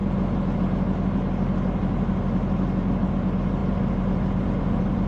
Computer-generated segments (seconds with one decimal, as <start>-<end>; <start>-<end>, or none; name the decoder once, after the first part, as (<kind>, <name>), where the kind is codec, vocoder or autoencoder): none